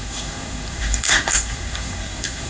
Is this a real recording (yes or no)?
no